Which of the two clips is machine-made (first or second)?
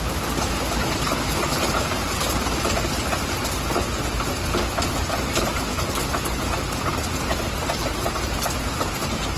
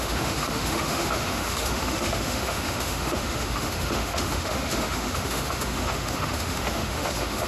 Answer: second